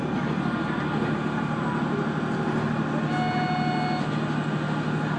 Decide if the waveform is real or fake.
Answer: real